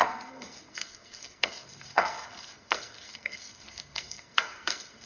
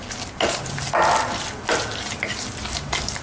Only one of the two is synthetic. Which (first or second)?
first